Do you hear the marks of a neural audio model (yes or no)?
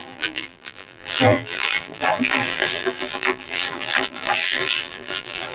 yes